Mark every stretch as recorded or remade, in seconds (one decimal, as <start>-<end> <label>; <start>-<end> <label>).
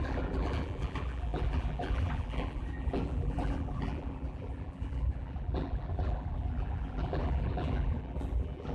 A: 0.0-8.7 remade